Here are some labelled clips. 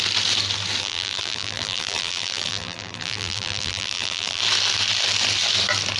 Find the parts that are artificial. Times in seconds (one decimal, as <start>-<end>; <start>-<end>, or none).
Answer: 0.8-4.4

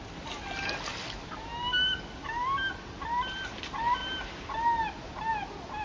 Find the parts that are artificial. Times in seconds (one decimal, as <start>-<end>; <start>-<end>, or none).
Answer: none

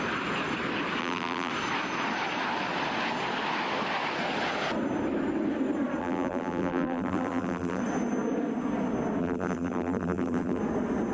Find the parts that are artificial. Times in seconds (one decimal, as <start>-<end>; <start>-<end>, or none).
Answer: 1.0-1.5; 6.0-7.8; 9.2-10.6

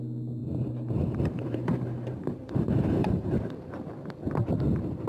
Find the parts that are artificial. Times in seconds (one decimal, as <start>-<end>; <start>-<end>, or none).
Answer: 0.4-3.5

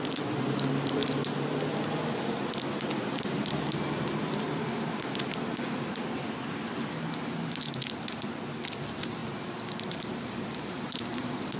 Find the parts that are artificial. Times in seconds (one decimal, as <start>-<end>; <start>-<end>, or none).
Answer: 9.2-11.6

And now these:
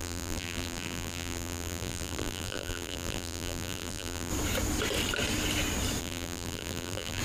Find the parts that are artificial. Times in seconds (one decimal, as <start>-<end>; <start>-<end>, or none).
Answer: 0.0-4.3; 6.0-7.2

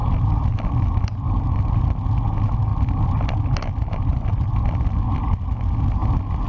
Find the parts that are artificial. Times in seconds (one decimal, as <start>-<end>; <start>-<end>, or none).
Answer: 0.0-1.4; 2.7-3.4; 4.1-5.3